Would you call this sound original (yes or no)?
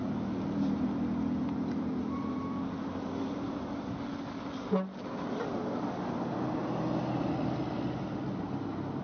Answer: yes